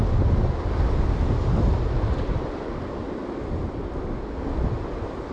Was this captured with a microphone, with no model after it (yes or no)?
yes